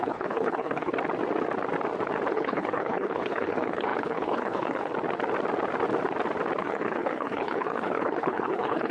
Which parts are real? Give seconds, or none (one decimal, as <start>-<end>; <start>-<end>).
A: 0.9-2.3; 4.9-6.6